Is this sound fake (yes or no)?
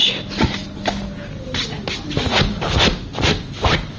no